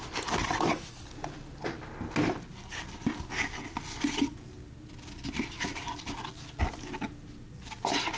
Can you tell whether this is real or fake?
real